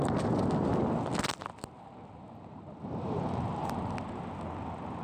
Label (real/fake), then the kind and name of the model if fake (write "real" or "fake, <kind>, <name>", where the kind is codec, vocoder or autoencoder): real